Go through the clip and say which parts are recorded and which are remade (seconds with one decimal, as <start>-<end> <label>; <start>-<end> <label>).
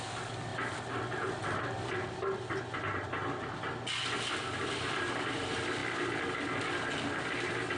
0.0-7.8 recorded